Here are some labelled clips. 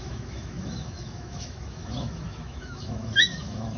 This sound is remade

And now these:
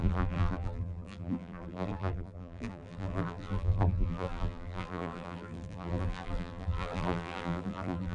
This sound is remade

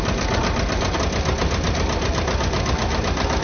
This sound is recorded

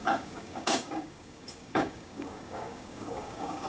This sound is remade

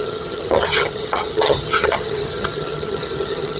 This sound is remade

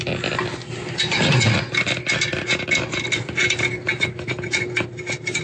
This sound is recorded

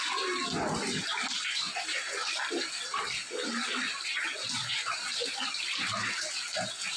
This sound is recorded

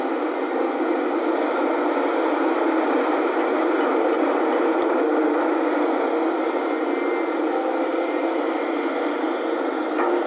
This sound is recorded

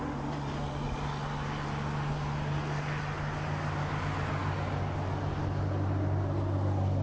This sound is recorded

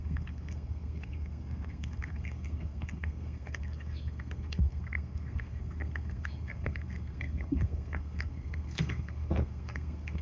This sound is remade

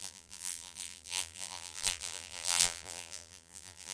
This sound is remade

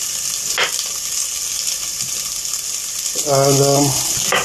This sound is recorded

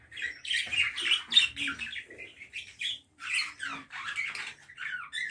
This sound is recorded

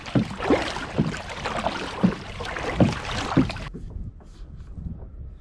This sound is remade